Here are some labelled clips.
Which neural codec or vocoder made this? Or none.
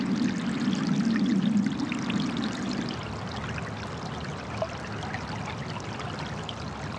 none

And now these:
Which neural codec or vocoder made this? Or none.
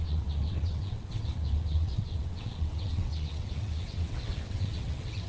vocoder, WaveNeXt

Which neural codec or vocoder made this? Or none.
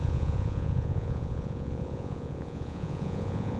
vocoder, Vocos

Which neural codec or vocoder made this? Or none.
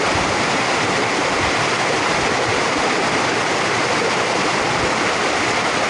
vocoder, BigVGAN v2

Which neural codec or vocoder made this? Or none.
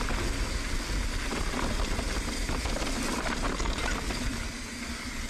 none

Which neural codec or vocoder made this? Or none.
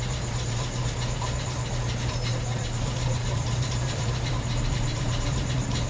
vocoder, BigVGAN v2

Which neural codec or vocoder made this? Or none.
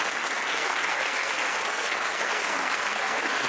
codec, SNAC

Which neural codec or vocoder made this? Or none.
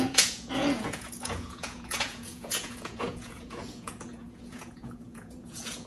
vocoder, Vocos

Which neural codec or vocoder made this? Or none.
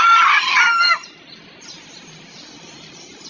none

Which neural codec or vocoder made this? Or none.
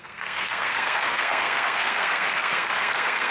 codec, SNAC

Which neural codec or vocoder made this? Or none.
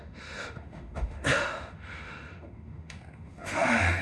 autoencoder, DAC-VAE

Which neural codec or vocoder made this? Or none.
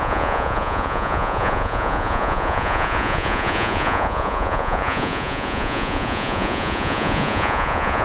vocoder, Vocos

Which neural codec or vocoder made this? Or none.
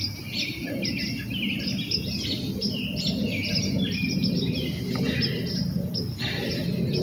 none